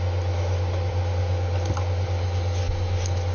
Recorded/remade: recorded